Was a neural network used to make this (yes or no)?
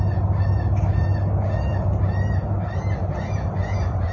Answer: no